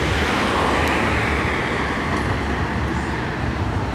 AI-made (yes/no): no